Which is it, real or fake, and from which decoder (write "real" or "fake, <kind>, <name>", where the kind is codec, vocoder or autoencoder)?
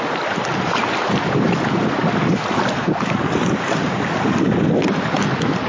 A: real